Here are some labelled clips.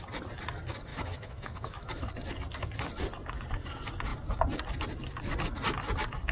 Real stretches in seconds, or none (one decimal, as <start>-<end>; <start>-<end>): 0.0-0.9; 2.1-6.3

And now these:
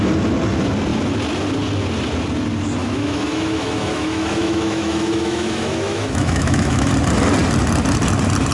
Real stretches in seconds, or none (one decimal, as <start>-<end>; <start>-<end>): 0.0-2.8; 6.9-8.5

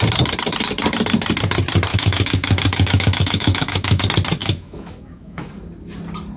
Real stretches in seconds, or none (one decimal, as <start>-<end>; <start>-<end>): 0.0-1.9; 4.0-4.4; 5.5-6.4

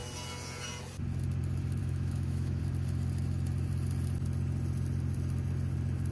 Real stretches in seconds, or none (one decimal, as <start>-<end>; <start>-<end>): 0.0-1.8; 2.6-6.1